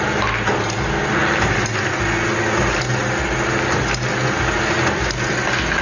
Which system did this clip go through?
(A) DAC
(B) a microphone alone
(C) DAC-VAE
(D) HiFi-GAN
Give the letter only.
B